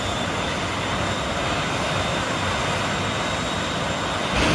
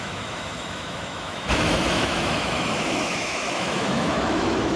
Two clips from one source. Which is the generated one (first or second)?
second